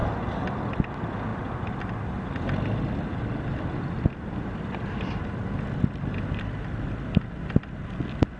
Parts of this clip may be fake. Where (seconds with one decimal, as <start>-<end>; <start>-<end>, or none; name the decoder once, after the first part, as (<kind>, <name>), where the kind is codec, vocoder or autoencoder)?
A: none